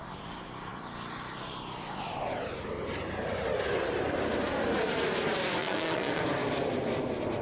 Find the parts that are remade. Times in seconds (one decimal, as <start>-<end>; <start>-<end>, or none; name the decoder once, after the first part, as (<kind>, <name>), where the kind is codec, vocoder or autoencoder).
5.6-6.2 (vocoder, Vocos)